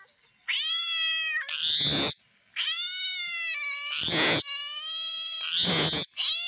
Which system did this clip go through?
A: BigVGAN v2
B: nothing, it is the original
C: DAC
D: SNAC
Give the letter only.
B